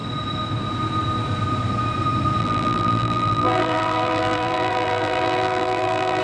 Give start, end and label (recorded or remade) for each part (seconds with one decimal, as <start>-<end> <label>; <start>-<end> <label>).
0.0-2.4 recorded; 2.4-6.2 remade